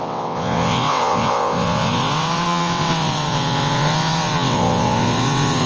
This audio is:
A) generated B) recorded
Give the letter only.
A